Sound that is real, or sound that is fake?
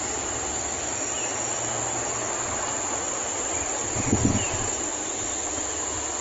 real